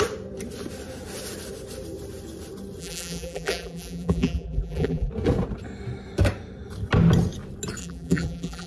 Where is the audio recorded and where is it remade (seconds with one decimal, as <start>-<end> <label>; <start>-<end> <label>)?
0.0-2.8 recorded; 2.8-5.1 remade; 5.1-7.8 recorded; 7.8-8.7 remade